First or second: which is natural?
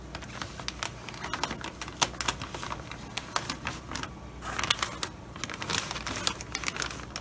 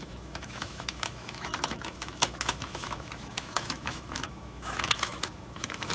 first